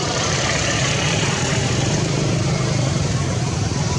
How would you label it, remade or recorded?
remade